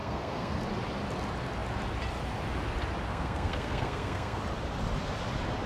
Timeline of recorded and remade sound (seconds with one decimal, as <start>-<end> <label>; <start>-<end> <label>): 0.0-0.6 remade; 0.6-3.1 recorded; 3.1-4.4 remade; 4.4-5.7 recorded